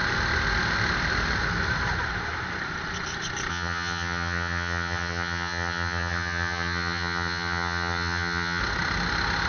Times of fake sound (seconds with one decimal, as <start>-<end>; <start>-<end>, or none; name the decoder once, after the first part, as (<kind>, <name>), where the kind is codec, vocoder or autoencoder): 3.5-8.6 (vocoder, HiFi-GAN)